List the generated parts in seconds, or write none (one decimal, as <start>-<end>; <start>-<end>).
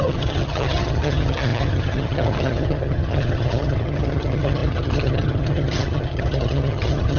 0.0-7.2